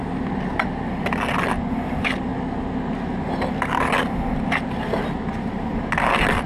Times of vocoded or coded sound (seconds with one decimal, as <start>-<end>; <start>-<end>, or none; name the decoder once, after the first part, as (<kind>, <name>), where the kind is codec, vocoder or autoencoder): none